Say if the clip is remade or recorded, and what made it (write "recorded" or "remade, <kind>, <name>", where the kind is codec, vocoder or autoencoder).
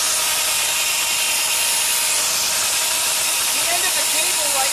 remade, vocoder, BigVGAN v2